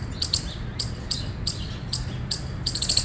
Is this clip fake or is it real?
real